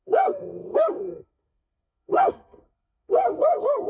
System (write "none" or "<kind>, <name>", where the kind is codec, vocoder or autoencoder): codec, SNAC